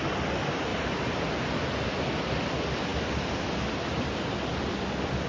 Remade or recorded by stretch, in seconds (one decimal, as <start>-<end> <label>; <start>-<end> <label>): 0.0-0.7 recorded; 0.7-1.7 remade; 1.7-2.9 recorded; 2.9-3.6 remade; 3.6-5.3 recorded